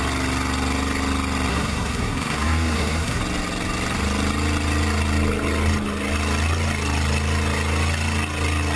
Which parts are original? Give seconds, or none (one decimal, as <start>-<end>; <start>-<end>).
0.0-1.5; 3.2-8.8